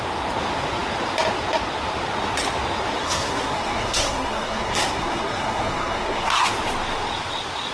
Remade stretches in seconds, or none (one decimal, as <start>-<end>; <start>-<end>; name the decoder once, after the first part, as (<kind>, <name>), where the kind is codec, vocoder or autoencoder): 3.0-6.5 (codec, SNAC)